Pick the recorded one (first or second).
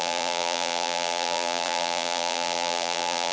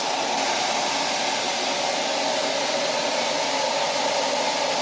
second